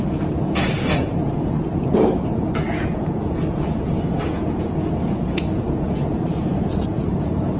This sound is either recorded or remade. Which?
remade